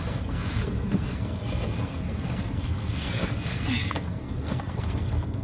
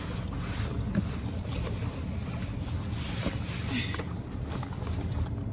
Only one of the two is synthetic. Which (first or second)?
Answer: first